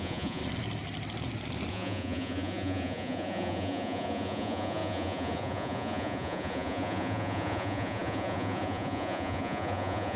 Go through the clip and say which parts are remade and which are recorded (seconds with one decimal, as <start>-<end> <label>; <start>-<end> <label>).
0.0-0.4 remade; 0.4-1.7 recorded; 1.7-10.2 remade